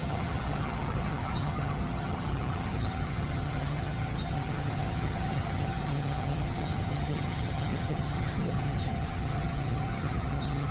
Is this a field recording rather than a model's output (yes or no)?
no